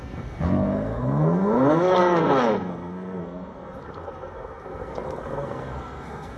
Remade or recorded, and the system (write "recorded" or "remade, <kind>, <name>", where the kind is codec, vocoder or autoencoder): remade, codec, SNAC